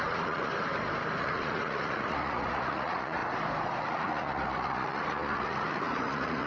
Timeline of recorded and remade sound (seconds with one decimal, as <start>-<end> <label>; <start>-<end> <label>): 0.0-0.5 remade; 0.5-1.2 recorded; 1.2-3.2 remade; 3.2-3.8 recorded; 3.8-6.5 remade